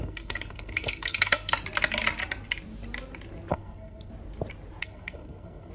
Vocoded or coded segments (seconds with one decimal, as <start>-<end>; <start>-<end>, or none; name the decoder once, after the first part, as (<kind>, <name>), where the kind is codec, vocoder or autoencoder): 0.0-1.5 (codec, SNAC); 3.5-4.1; 4.8-5.7